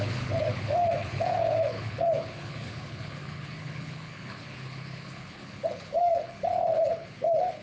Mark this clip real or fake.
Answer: fake